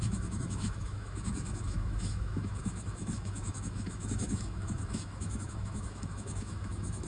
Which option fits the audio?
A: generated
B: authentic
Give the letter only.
A